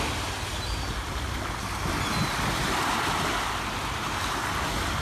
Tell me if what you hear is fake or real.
real